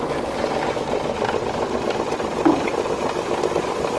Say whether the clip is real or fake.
real